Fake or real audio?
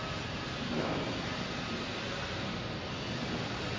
real